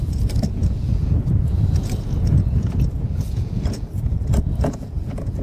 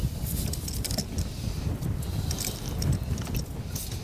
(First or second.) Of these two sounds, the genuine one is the second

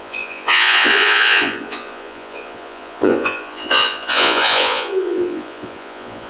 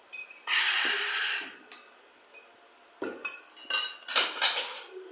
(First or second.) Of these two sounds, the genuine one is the second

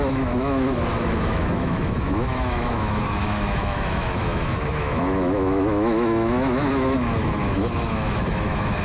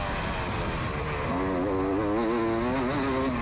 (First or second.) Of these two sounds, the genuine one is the second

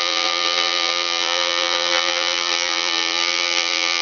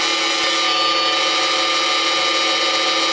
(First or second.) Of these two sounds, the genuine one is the second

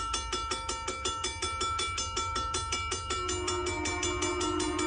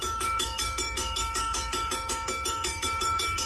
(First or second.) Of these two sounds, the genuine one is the first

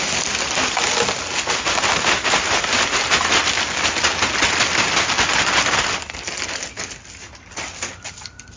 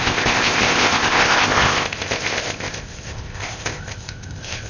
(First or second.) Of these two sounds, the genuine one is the first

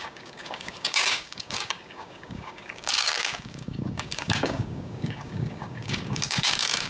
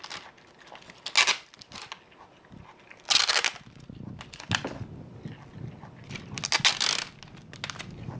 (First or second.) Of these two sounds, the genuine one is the second